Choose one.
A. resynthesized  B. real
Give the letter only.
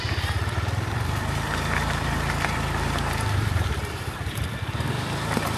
A